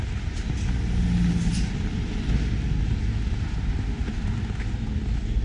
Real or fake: real